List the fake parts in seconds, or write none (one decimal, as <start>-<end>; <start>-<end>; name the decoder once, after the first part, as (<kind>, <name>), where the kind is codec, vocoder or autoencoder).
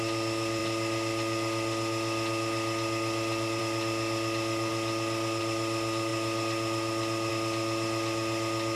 none